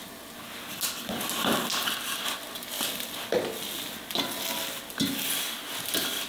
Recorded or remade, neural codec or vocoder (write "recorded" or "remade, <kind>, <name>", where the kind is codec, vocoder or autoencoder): recorded